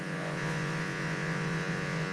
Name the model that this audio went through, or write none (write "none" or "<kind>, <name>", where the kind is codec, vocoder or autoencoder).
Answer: vocoder, Vocos